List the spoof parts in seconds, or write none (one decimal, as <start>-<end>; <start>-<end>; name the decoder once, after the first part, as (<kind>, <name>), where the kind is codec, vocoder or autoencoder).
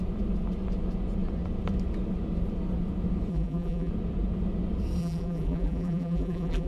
3.3-3.9 (vocoder, BigVGAN v2); 5.0-6.7